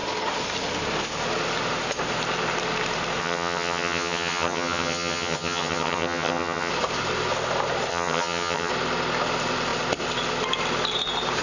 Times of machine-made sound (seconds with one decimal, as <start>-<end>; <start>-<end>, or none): 3.2-6.7; 7.9-8.7